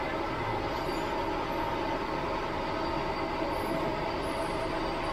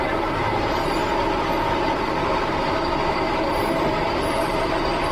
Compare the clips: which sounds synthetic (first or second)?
second